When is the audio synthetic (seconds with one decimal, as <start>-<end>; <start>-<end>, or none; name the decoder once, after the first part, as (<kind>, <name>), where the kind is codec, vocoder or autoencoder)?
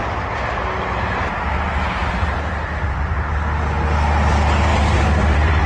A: 4.7-5.7 (vocoder, BigVGAN v2)